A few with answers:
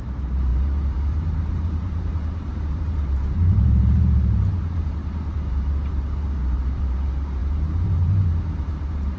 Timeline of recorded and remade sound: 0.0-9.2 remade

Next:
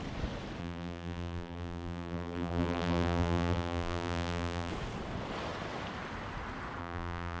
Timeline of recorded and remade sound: 0.0-0.6 recorded; 0.6-4.7 remade; 4.7-6.8 recorded; 6.8-7.4 remade

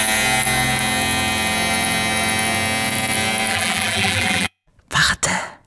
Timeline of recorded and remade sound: 0.0-3.5 recorded; 3.5-4.7 remade; 4.7-5.7 recorded

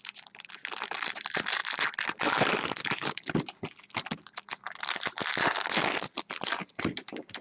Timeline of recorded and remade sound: 0.0-1.6 remade; 1.6-6.0 recorded; 6.0-7.4 remade

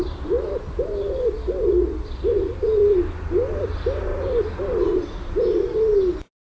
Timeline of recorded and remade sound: 0.0-6.5 remade